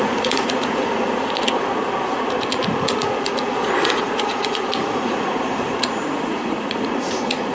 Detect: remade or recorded remade